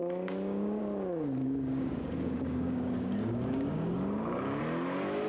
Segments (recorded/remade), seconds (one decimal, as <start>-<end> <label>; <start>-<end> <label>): 0.0-0.8 remade; 0.8-1.4 recorded; 1.4-4.6 remade; 4.6-5.3 recorded